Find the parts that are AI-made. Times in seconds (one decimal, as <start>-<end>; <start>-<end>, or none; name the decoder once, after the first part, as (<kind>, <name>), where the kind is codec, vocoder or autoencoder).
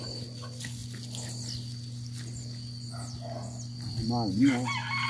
none